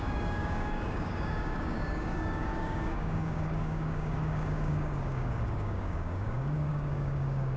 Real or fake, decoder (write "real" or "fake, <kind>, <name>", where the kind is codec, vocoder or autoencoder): fake, codec, DAC